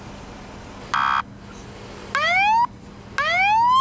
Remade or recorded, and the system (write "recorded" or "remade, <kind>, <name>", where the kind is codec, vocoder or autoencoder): recorded